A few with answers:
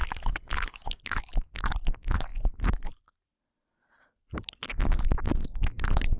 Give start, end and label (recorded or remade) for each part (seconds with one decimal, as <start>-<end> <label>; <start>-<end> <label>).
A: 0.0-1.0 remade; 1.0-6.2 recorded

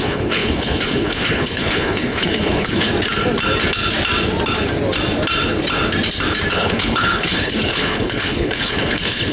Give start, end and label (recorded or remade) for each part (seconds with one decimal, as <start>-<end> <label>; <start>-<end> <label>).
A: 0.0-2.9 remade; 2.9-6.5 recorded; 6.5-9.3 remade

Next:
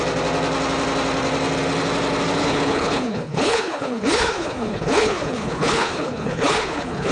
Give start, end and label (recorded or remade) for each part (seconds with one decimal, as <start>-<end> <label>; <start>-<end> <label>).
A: 0.0-2.4 recorded; 2.4-7.1 remade

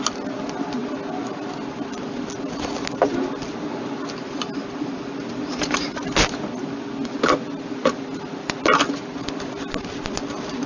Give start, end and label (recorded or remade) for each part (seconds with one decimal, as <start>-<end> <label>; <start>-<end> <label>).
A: 0.0-10.7 recorded